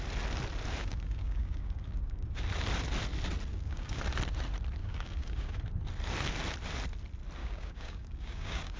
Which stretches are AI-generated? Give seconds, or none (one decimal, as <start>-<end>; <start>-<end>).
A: 0.8-2.4; 3.5-4.0; 4.8-5.6; 7.4-8.8